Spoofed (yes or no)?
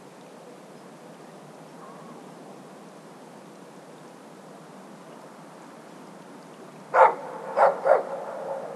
no